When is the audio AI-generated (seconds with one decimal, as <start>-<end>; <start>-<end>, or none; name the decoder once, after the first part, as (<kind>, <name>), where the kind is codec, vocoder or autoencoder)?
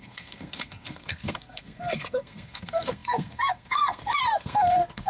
0.0-5.1 (codec, SNAC)